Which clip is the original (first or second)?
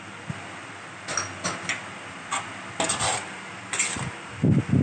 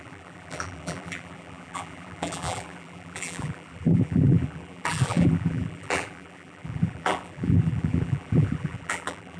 first